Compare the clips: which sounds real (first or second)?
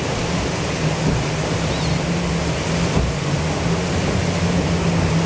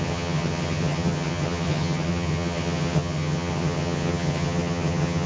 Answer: first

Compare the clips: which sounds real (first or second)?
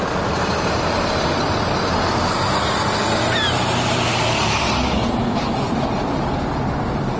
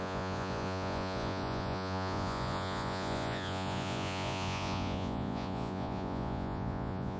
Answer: first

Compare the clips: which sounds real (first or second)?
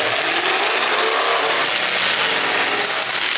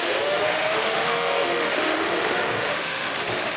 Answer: first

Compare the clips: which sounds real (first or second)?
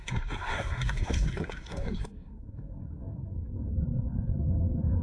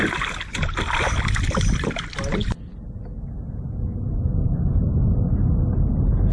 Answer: second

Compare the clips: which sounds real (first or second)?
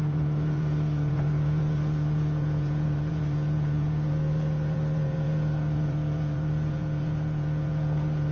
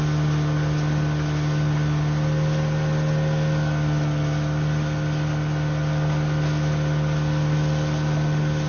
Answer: second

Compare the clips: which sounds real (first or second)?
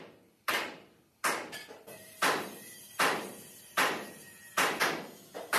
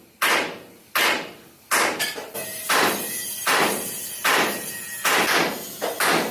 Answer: second